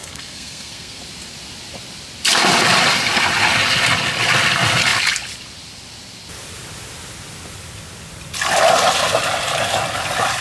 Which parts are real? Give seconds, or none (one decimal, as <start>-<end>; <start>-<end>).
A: 1.0-10.4